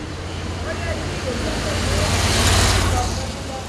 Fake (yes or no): no